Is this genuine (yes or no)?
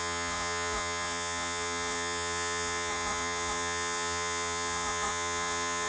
no